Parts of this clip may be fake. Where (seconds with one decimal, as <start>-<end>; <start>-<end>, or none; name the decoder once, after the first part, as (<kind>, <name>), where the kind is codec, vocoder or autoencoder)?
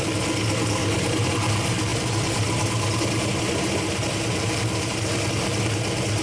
0.8-1.3 (vocoder, BigVGAN v2)